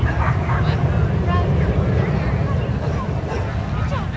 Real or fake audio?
real